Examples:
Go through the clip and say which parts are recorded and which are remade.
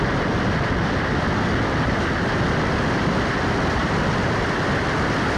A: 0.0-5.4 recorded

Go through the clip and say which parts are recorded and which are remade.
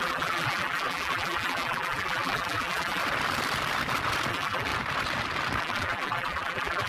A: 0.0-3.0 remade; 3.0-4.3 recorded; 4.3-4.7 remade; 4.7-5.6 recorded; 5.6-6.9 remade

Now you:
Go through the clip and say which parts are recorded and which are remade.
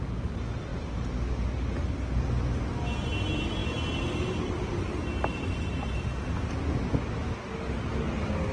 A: 0.0-8.5 recorded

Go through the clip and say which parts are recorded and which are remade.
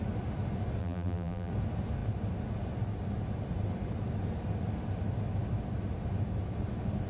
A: 0.0-0.8 recorded; 0.8-1.5 remade; 1.5-7.1 recorded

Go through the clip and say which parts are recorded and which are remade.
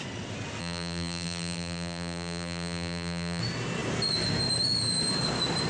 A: 0.0-0.6 recorded; 0.6-3.4 remade; 3.4-5.7 recorded